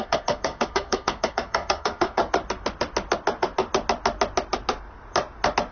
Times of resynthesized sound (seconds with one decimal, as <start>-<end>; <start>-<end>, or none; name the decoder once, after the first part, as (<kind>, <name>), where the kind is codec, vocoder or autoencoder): 0.0-2.2 (codec, SNAC)